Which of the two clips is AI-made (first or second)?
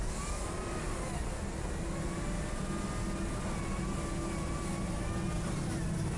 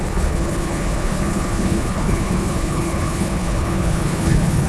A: second